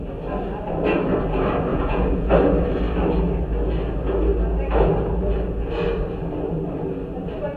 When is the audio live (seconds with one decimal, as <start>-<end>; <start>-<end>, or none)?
0.0-1.7; 2.3-7.6